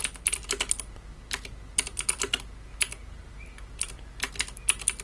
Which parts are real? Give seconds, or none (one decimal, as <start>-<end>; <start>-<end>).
0.0-5.0